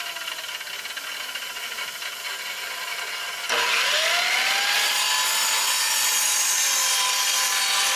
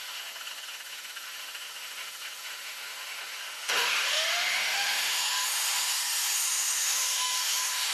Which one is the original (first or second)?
first